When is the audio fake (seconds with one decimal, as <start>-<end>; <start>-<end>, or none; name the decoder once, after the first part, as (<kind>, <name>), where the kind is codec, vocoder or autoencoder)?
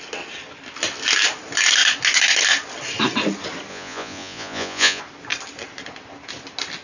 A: 3.7-5.0 (vocoder, Vocos)